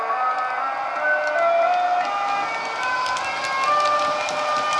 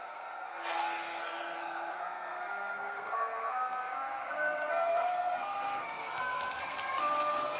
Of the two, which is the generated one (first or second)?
second